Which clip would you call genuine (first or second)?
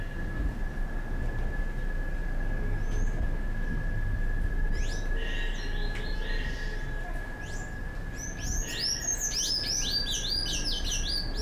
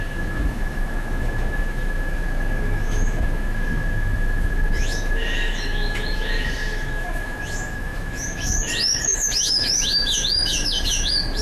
first